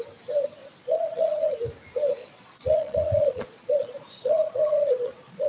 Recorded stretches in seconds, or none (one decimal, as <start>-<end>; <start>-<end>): 0.0-0.6; 1.5-2.2